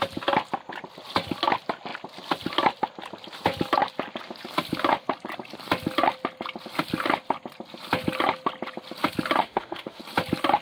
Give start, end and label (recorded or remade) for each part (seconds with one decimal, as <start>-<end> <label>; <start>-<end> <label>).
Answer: 0.0-9.4 recorded; 9.4-10.0 remade; 10.0-10.6 recorded